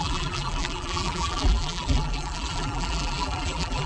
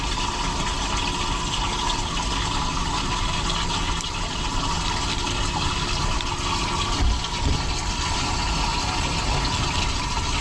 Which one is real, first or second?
second